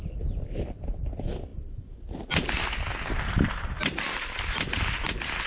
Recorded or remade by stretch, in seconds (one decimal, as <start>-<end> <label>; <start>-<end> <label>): 0.0-5.5 recorded